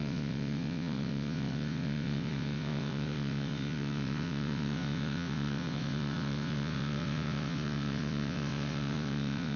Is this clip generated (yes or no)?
yes